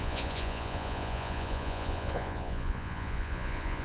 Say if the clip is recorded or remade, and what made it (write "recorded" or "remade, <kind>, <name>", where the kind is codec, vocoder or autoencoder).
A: remade, vocoder, Vocos